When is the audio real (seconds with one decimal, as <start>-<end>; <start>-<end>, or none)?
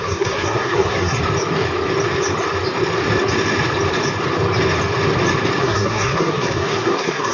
1.2-5.6